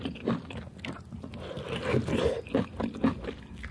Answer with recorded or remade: recorded